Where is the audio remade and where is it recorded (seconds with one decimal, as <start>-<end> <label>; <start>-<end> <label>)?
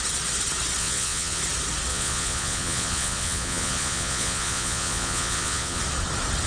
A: 0.0-0.8 recorded; 0.8-1.4 remade; 1.4-1.9 recorded; 1.9-5.8 remade; 5.8-6.5 recorded